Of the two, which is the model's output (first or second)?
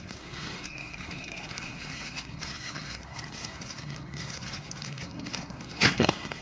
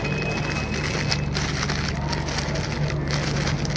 first